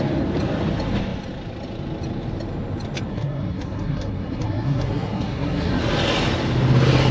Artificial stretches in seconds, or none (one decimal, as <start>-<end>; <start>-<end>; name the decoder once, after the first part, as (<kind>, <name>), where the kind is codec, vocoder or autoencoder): 3.1-5.8 (codec, SNAC)